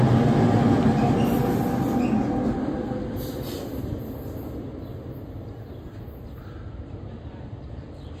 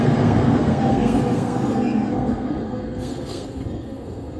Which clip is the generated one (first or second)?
second